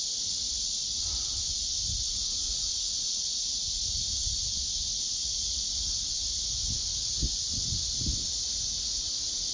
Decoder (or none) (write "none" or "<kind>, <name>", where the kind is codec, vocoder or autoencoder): none